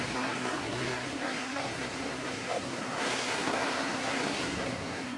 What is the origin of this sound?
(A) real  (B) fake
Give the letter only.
B